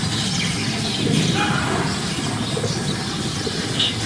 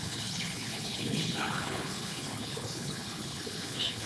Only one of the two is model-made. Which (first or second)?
second